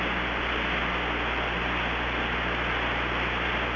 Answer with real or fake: real